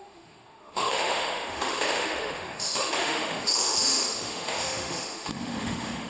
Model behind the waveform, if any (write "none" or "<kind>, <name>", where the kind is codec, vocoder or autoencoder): autoencoder, DAC-VAE